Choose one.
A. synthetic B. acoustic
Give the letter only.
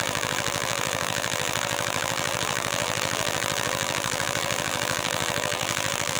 A